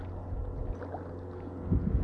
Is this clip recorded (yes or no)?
yes